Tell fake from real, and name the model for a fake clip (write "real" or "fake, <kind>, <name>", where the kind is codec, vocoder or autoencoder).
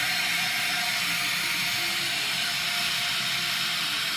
real